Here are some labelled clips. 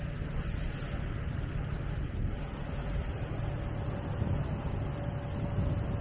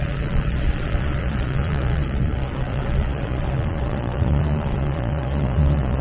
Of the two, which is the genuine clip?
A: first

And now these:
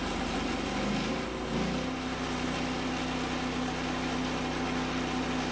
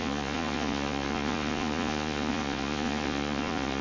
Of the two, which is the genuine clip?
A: first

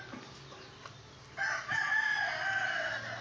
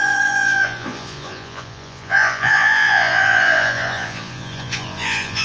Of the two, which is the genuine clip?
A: first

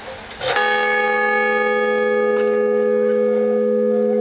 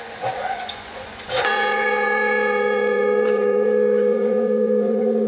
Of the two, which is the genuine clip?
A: first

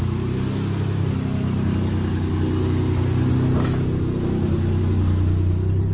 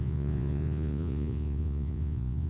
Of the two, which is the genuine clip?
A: first